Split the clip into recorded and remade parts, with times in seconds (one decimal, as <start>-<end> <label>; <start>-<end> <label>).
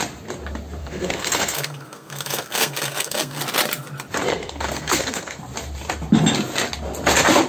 0.0-0.8 recorded; 0.8-3.4 remade; 3.4-4.3 recorded; 4.3-5.4 remade; 5.4-7.5 recorded